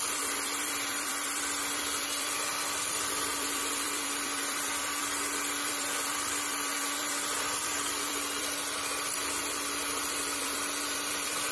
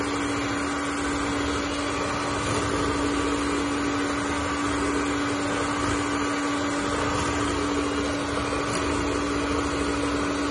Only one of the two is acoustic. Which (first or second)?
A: second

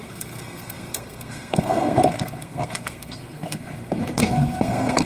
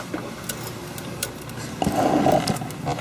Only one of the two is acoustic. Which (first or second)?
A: second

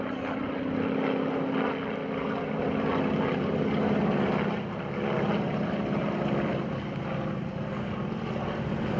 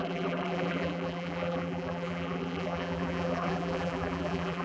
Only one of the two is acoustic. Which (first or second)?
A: first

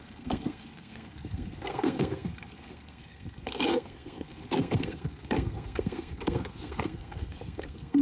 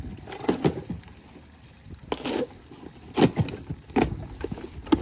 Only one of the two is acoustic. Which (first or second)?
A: second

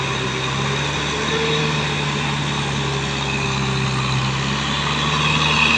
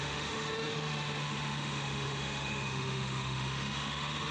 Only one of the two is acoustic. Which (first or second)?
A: first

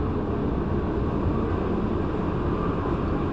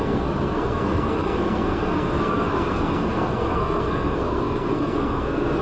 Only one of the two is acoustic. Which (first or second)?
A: first